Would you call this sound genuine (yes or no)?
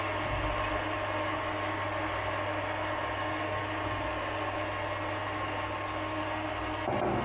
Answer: yes